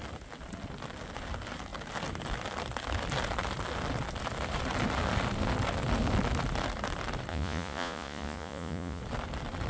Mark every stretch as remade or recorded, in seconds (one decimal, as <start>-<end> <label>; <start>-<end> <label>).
0.0-7.3 recorded; 7.3-9.0 remade; 9.0-9.7 recorded